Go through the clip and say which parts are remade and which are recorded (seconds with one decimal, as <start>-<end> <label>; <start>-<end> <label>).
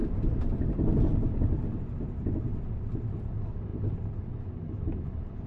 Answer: 0.0-3.7 recorded; 3.7-4.3 remade; 4.3-5.5 recorded